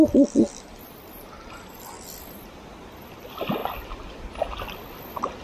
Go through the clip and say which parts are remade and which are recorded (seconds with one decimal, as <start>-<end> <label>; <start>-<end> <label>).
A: 0.0-5.4 recorded